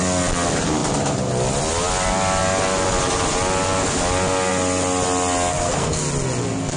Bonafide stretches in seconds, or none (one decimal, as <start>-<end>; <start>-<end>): 0.0-5.5; 6.0-6.8